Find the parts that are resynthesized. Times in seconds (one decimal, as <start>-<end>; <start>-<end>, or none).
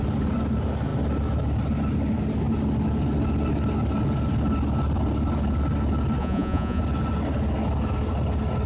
6.2-6.8